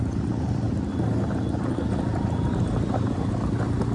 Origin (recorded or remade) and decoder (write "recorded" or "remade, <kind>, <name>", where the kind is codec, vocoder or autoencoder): recorded